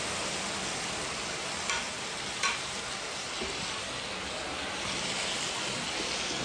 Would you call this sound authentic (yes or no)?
yes